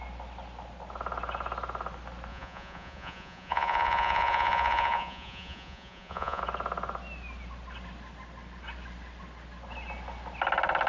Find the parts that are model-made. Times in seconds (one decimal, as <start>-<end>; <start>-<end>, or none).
2.3-6.4

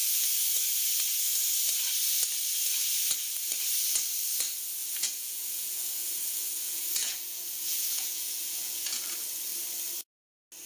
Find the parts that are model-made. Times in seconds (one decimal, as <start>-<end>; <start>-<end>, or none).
4.8-9.0

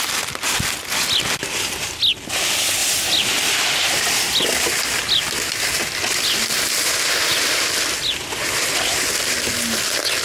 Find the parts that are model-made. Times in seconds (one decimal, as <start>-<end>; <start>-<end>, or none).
none

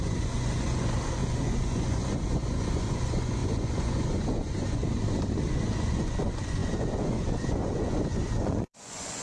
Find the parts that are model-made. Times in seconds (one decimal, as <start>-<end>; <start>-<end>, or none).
0.0-4.8; 5.5-9.2